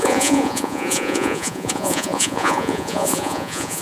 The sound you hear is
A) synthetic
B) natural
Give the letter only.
A